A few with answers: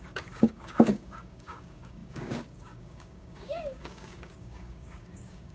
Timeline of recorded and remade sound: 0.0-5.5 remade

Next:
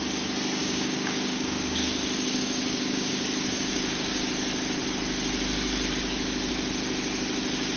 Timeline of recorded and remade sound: 0.0-0.6 recorded; 0.6-4.3 remade; 4.3-7.8 recorded

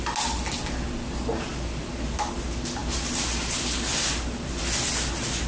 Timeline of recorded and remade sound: 0.0-5.5 recorded